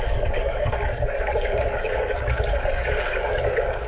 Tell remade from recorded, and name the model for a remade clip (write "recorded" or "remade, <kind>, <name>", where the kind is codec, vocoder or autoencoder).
remade, codec, DAC